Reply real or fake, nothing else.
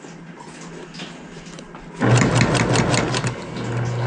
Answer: real